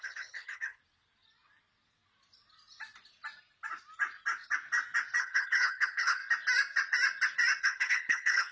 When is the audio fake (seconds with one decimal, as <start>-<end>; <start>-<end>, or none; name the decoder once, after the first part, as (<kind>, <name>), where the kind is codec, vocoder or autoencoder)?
0.0-0.8 (codec, HILCodec); 5.2-6.2; 7.6-8.5